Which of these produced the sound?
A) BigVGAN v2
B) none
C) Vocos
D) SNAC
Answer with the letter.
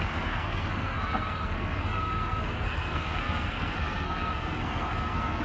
D